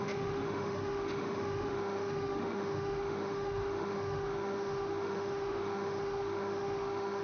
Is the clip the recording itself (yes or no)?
no